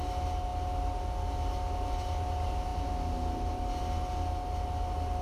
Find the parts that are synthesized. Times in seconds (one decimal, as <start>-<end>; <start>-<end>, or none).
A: none